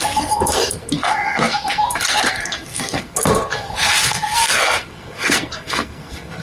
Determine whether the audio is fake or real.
fake